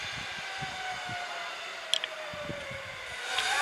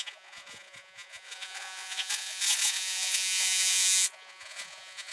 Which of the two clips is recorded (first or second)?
first